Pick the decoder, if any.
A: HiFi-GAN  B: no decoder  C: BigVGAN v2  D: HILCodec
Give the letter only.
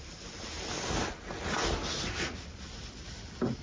B